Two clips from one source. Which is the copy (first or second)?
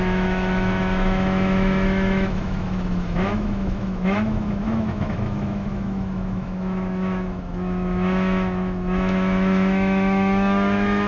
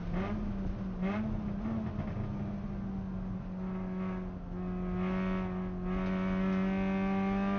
first